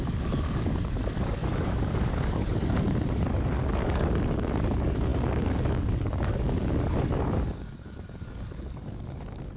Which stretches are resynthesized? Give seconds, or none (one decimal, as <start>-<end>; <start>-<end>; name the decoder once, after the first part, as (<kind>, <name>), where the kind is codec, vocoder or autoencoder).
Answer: 0.0-9.6 (codec, DAC)